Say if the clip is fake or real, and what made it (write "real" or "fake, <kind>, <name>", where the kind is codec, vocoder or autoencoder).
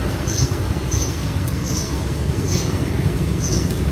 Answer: fake, codec, SNAC